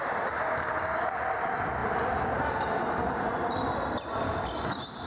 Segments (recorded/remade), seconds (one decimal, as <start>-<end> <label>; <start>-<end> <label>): 0.0-1.8 recorded; 1.8-3.3 remade; 3.3-5.1 recorded